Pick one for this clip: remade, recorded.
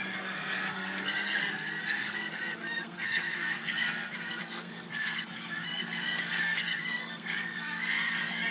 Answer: remade